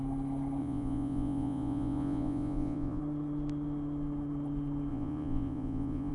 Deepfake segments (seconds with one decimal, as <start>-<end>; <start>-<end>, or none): 0.6-3.0; 4.9-6.1